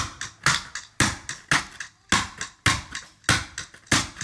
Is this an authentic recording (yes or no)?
yes